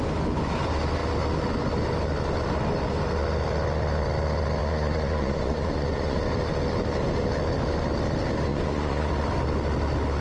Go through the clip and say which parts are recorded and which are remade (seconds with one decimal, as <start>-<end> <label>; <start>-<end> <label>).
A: 0.0-4.6 recorded; 4.6-6.2 remade; 6.2-8.5 recorded; 8.5-9.1 remade; 9.1-10.2 recorded